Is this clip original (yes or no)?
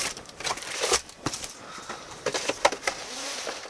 no